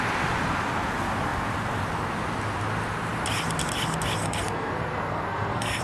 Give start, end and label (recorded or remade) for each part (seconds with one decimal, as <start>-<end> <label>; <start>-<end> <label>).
0.0-4.2 recorded; 4.2-5.8 remade